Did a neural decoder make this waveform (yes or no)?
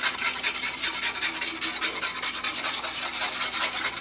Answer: no